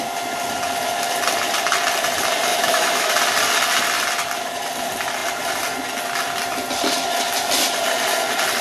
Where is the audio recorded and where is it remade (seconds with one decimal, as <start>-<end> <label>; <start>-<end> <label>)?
0.0-2.5 recorded; 2.5-3.1 remade; 3.1-8.6 recorded

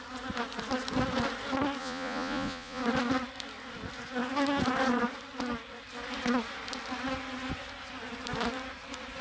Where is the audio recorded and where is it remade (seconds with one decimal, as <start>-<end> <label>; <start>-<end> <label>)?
0.0-1.8 recorded; 1.8-2.8 remade; 2.8-9.2 recorded

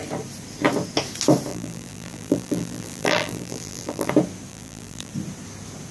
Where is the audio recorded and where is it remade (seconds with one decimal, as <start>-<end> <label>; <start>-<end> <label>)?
0.0-1.5 recorded; 1.5-4.1 remade; 4.1-4.5 recorded; 4.5-5.1 remade; 5.1-5.9 recorded

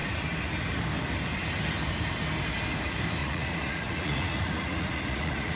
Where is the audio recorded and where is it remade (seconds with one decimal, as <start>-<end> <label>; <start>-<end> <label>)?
0.0-3.2 recorded; 3.2-5.6 remade